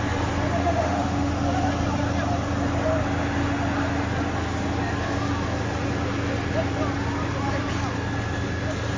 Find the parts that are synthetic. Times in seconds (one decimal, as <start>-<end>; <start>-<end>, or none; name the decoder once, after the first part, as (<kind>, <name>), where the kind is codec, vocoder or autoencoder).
0.6-1.3 (autoencoder, DAC-VAE)